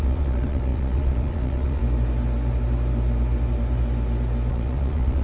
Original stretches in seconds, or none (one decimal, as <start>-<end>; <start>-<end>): 1.8-4.5